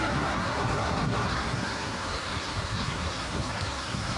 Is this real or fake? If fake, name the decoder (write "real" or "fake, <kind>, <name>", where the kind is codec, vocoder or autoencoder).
fake, codec, SNAC